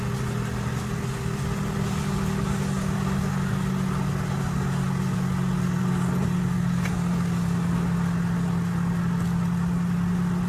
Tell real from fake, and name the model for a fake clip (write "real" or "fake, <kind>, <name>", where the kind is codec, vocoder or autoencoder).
real